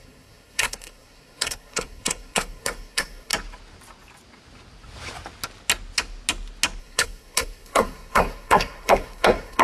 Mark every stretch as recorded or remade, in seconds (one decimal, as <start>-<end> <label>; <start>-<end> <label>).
0.0-3.3 remade; 3.3-6.8 recorded; 6.8-9.6 remade